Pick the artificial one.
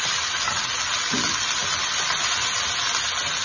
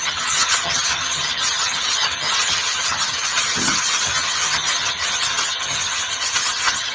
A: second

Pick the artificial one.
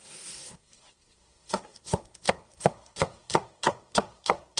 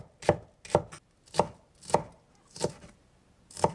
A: first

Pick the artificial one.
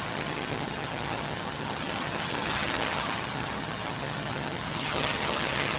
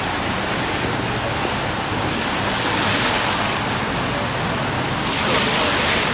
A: first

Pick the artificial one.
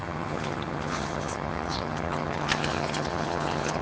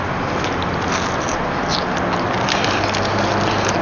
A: first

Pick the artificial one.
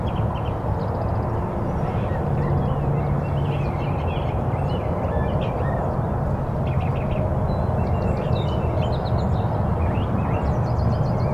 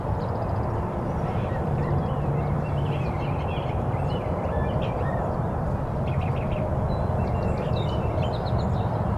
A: second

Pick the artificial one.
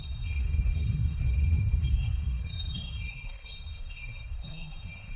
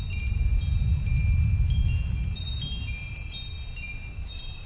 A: first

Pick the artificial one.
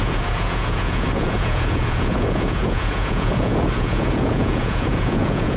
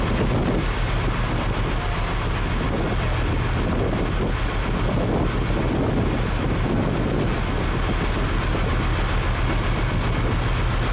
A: first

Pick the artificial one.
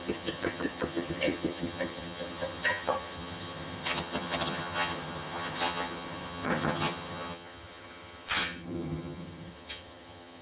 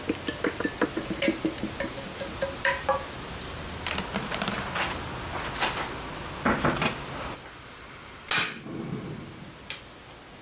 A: first